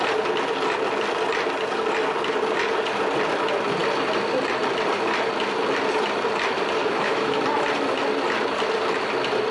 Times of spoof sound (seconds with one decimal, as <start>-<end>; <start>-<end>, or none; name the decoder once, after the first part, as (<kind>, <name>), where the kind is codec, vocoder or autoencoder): 6.8-7.4 (autoencoder, DAC-VAE)